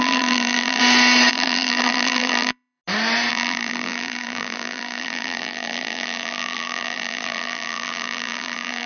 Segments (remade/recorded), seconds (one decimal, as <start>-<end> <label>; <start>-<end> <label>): 0.0-0.8 remade; 0.8-1.3 recorded; 1.3-2.8 remade; 2.8-3.3 recorded; 3.3-8.9 remade